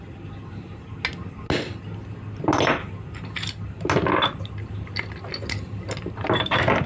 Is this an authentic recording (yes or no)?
yes